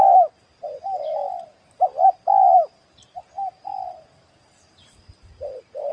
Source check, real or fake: real